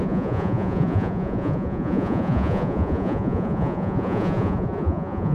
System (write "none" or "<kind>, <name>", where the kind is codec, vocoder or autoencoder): vocoder, Vocos